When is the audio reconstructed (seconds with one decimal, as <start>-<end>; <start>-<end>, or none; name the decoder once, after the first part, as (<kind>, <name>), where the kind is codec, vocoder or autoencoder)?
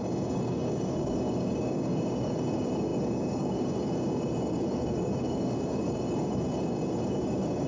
0.0-7.7 (codec, DAC)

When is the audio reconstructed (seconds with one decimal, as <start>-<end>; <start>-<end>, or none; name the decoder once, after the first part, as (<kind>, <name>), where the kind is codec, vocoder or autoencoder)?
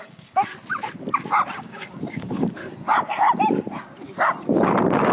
0.0-0.5 (codec, DAC); 1.6-2.6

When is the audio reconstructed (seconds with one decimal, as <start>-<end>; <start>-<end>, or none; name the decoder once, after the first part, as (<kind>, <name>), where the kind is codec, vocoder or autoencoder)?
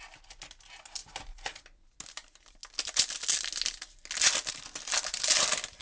none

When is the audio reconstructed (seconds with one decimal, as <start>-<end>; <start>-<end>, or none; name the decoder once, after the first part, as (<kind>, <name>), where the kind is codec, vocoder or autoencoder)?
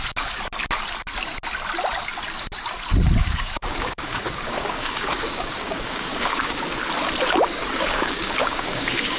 3.2-6.6 (codec, DAC); 7.6-9.2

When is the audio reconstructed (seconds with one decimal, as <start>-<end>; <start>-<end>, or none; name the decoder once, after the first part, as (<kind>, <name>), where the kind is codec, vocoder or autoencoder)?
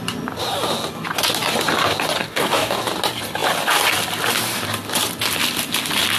2.2-2.8 (codec, DAC)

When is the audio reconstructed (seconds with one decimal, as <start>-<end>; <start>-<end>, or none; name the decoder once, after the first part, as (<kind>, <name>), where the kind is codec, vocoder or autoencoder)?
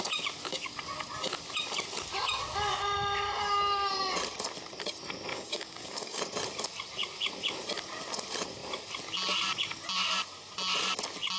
5.3-6.2 (codec, DAC)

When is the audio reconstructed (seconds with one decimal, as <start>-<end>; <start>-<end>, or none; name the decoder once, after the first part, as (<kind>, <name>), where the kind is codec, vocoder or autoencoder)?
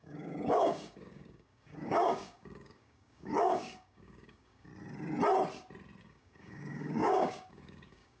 0.0-4.7 (codec, DAC); 6.0-8.2